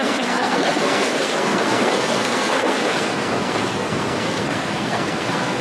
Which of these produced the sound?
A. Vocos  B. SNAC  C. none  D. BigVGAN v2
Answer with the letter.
B